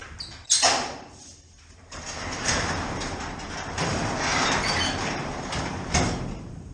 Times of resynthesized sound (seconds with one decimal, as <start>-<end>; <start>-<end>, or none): 0.8-6.7